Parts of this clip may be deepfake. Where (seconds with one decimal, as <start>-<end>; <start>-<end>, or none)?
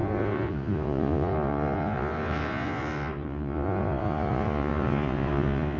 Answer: 0.0-5.8